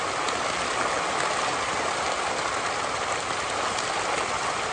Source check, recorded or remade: recorded